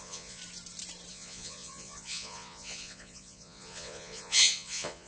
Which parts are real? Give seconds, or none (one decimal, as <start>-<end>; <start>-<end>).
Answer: 0.4-1.1